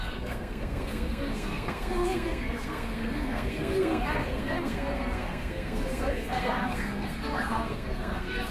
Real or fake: fake